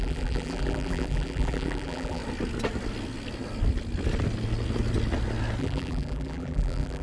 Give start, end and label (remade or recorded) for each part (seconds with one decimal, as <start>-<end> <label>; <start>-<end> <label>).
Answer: 0.0-2.2 remade; 2.2-5.6 recorded; 5.6-7.0 remade